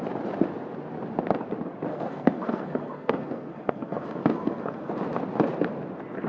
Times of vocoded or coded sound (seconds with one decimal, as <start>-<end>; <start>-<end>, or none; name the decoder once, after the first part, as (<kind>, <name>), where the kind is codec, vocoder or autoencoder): 1.9-4.9 (codec, SNAC)